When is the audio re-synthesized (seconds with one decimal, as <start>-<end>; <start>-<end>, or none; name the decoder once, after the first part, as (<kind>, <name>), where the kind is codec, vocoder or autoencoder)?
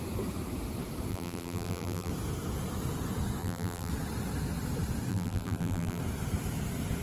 1.1-2.1 (vocoder, BigVGAN v2); 3.4-3.9; 5.1-6.0